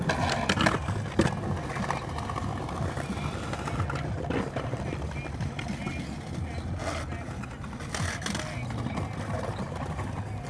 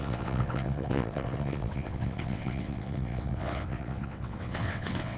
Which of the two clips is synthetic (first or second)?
second